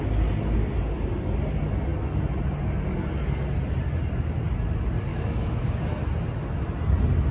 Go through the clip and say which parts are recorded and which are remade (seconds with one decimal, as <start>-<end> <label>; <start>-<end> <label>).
0.0-5.1 recorded; 5.1-5.6 remade; 5.6-7.3 recorded